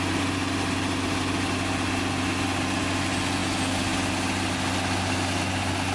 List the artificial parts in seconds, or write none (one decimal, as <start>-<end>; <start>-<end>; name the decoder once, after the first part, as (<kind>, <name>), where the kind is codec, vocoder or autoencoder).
none